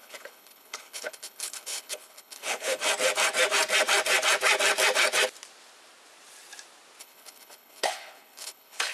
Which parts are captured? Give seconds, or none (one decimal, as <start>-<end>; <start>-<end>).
2.8-7.0